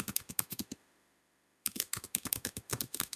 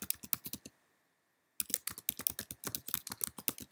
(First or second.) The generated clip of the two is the first